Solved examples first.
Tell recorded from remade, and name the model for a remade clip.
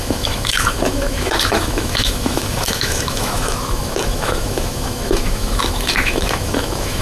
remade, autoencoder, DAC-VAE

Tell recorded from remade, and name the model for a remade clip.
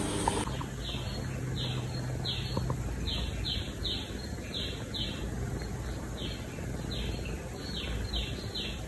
recorded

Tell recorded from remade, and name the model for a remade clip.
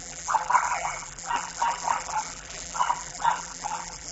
remade, vocoder, BigVGAN v2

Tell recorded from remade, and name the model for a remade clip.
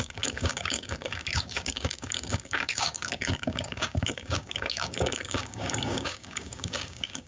remade, codec, DAC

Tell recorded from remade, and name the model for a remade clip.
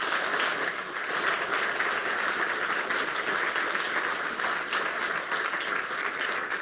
recorded